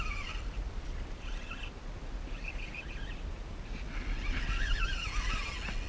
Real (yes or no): yes